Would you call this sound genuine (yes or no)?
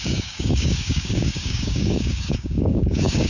no